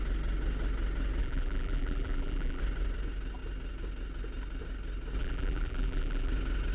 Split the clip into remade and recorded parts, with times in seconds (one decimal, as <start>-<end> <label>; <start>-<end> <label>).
0.0-1.2 recorded; 1.2-2.6 remade; 2.6-5.2 recorded; 5.2-6.3 remade; 6.3-6.7 recorded